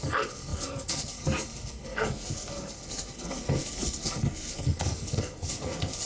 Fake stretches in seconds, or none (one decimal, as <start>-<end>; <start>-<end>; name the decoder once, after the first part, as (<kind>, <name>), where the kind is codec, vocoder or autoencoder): 0.0-6.1 (codec, SNAC)